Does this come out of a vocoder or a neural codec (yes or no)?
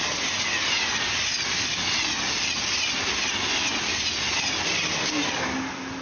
no